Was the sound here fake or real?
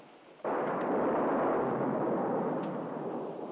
real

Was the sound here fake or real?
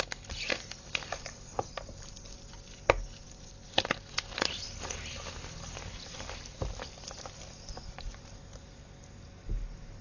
real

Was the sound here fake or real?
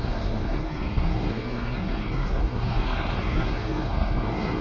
fake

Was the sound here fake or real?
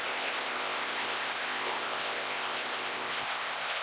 fake